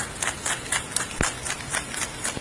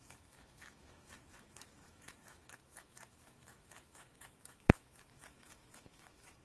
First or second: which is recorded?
first